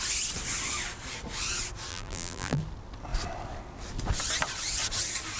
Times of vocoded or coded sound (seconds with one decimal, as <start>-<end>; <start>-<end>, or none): 1.9-2.6